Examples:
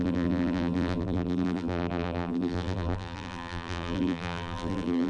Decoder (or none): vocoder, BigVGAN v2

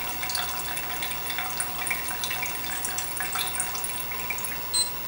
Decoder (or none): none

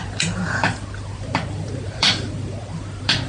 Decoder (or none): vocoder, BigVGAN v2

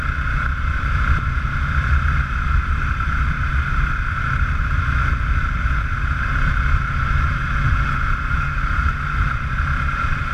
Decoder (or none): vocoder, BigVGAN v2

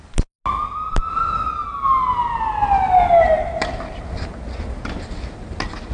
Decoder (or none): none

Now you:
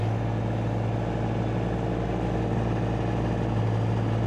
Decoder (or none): none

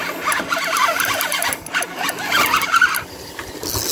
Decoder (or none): none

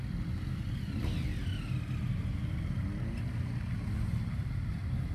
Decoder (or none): none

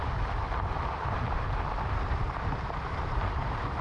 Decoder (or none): vocoder, BigVGAN v2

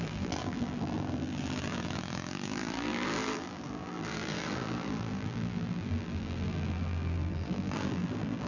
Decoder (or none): vocoder, BigVGAN v2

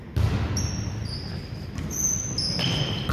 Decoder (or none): none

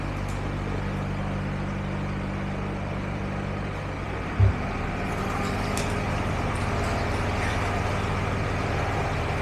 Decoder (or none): none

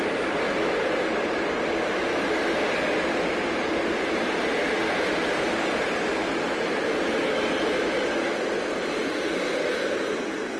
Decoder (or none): none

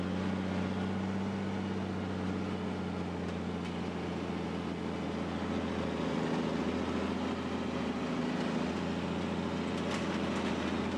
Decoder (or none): none